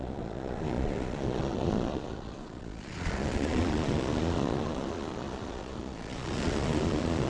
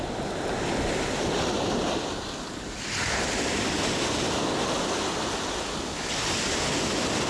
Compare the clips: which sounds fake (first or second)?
first